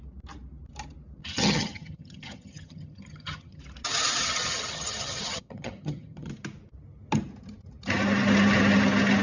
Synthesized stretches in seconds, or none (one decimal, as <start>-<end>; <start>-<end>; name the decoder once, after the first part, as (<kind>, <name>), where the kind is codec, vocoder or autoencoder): 1.2-3.6 (vocoder, HiFi-GAN); 4.2-6.3